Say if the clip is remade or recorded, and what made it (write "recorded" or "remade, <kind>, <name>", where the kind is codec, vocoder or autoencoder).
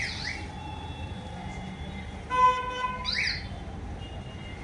recorded